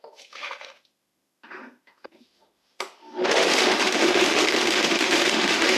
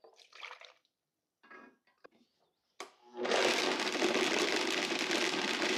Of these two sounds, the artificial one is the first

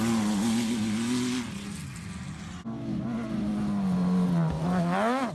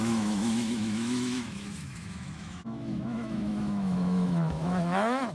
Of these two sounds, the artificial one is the second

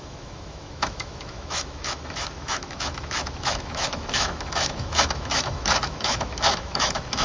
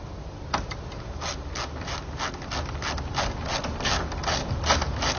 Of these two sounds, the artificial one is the first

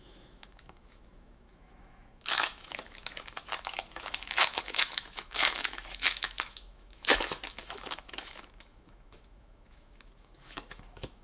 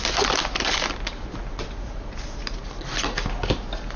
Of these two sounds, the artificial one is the first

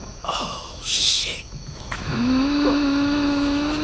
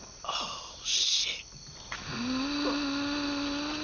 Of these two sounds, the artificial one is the first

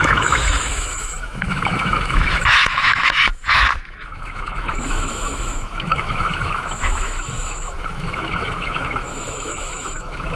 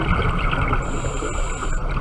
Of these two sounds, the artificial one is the first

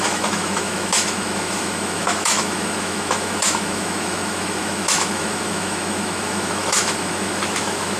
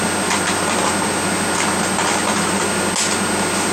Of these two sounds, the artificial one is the first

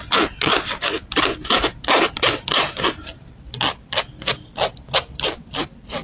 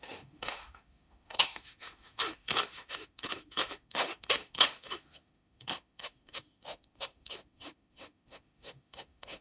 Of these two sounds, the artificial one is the second